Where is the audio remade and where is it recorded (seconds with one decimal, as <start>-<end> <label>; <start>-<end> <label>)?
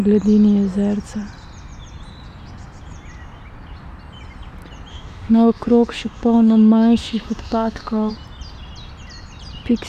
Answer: 0.0-4.9 recorded; 4.9-8.1 remade; 8.1-9.9 recorded